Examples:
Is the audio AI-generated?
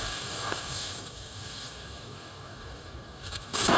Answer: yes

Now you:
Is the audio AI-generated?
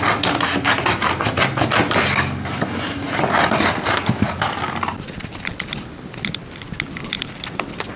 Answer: no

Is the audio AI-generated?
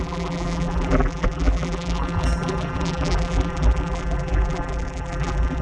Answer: yes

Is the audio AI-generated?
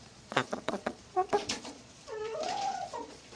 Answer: yes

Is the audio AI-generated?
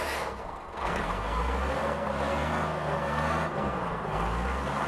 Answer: yes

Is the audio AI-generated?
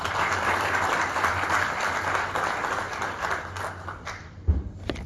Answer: no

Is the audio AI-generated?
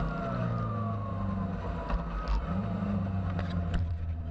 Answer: no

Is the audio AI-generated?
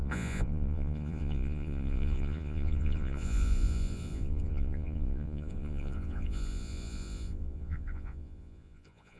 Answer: yes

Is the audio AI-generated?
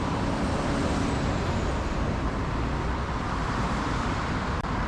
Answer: yes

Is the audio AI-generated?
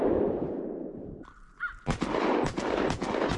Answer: no